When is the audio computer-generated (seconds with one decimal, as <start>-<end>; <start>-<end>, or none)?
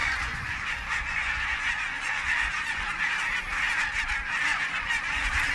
0.0-3.0; 4.5-5.5